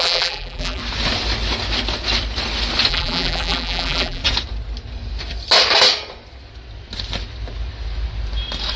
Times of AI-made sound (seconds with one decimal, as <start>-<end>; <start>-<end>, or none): 0.0-0.8; 2.9-4.2